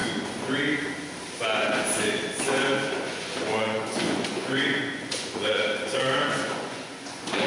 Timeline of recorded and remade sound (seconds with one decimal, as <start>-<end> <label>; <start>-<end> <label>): 0.0-2.1 recorded; 2.1-7.5 remade